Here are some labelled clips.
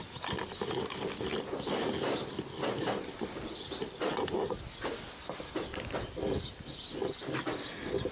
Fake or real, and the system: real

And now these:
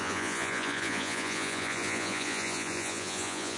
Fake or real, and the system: fake, vocoder, Vocos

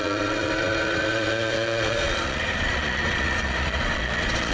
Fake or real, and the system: fake, vocoder, Vocos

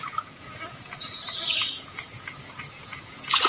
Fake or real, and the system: fake, vocoder, Vocos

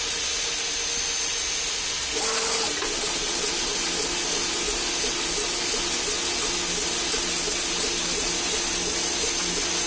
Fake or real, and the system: real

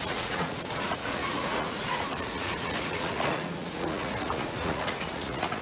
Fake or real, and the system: fake, vocoder, Vocos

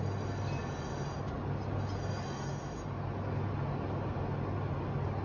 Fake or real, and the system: real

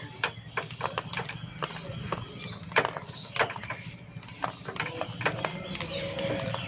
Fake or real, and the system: real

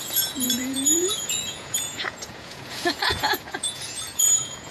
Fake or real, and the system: fake, vocoder, Vocos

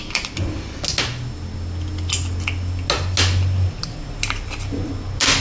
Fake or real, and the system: real